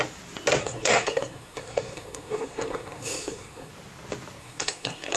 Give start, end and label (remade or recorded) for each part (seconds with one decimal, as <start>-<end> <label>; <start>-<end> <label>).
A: 0.0-0.6 recorded; 0.6-3.7 remade; 3.7-4.4 recorded; 4.4-5.2 remade